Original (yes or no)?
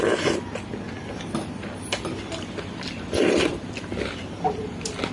yes